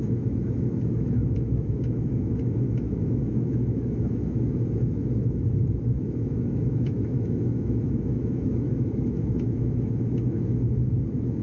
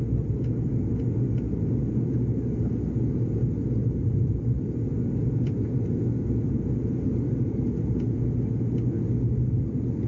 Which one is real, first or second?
second